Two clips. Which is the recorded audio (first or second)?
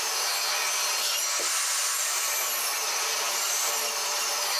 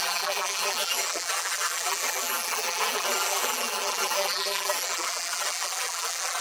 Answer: first